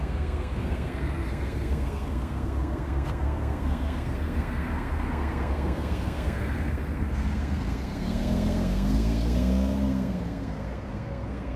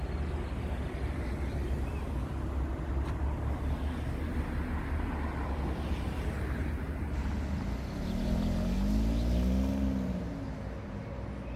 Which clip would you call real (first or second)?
second